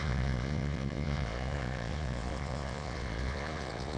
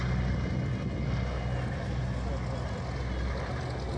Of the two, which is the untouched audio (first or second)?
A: second